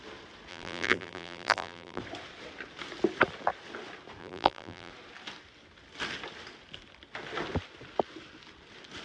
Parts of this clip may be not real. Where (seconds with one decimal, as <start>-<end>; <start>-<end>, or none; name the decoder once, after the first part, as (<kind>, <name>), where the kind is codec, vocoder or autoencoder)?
0.5-2.0 (vocoder, BigVGAN v2); 4.2-4.9